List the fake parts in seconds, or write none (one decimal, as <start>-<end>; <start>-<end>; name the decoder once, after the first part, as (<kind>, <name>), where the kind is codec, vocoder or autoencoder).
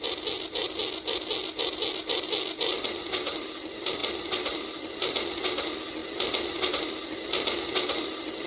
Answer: none